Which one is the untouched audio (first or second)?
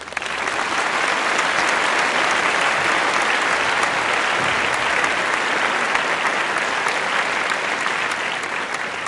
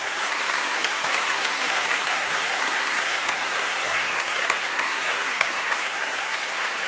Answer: first